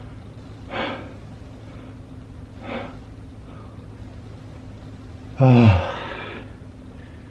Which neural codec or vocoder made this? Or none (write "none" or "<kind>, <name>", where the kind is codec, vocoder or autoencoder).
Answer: none